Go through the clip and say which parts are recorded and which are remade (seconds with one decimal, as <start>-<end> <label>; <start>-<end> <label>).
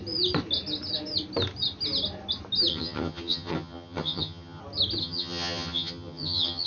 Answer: 0.0-2.7 recorded; 2.7-4.6 remade; 4.6-5.0 recorded; 5.0-6.7 remade